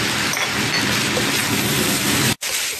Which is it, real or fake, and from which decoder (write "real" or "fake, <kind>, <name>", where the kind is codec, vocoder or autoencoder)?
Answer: fake, vocoder, BigVGAN v2